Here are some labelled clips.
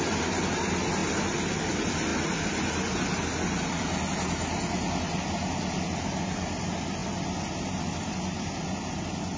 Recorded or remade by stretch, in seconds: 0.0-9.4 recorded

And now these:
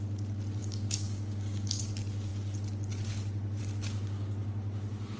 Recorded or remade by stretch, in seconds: 0.0-0.6 recorded; 0.6-1.8 remade; 1.8-5.2 recorded

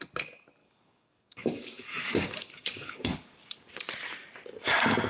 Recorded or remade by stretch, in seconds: 0.0-0.6 recorded; 0.6-3.7 remade; 3.7-5.1 recorded

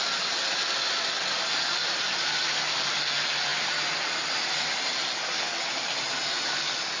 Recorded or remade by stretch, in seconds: 0.0-7.0 recorded

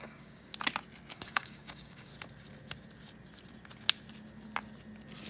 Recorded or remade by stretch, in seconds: 0.0-0.5 remade; 0.5-1.1 recorded; 1.1-2.1 remade; 2.1-5.3 recorded

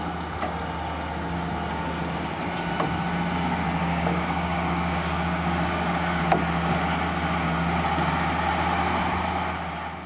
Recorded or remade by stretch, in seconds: 0.0-3.8 recorded; 3.8-6.2 remade; 6.2-10.1 recorded